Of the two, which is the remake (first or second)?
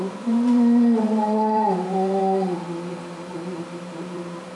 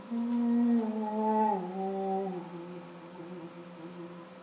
first